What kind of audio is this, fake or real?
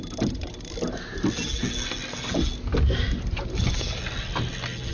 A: real